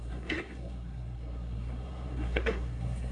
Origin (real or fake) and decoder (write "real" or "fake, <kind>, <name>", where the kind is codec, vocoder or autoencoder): fake, codec, SNAC